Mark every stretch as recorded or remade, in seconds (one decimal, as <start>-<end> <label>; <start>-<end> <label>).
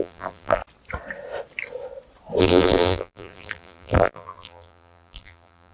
0.0-0.6 remade; 0.6-2.4 recorded; 2.4-5.7 remade